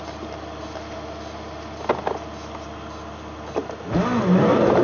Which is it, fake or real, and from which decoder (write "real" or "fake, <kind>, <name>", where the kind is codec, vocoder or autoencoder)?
real